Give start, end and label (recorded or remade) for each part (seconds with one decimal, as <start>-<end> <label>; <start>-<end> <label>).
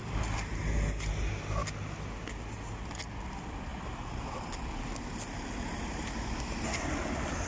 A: 0.0-7.5 recorded